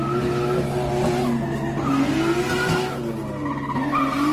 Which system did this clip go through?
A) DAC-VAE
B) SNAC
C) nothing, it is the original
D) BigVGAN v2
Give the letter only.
C